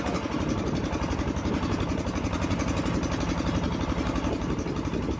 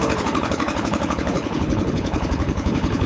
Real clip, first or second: first